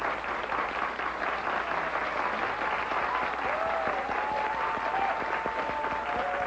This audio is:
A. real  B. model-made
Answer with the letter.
A